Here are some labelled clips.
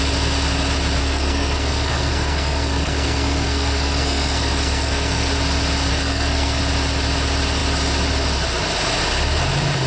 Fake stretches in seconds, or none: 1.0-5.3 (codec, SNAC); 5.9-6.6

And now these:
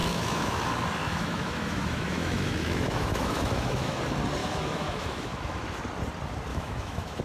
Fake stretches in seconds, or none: 0.0-0.6 (autoencoder, DAC-VAE); 1.0-4.0; 4.4-5.8; 6.5-7.2

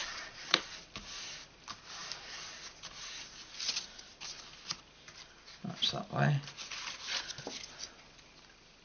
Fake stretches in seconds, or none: 0.0-0.6 (vocoder, Vocos)

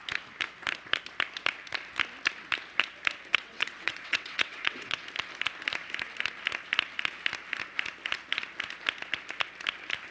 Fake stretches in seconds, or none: 3.3-5.0 (vocoder, WaveNeXt)

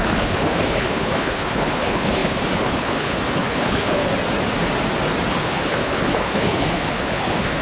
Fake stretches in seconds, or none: 0.0-4.0 (codec, HILCodec); 5.3-7.6

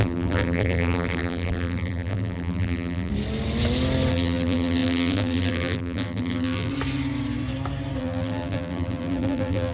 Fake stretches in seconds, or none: 0.0-3.1 (vocoder, BigVGAN v2); 4.1-6.7; 8.0-9.7